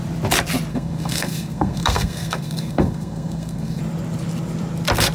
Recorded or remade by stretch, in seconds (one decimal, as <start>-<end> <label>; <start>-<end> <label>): 0.0-0.7 recorded; 0.7-3.8 remade; 3.8-5.1 recorded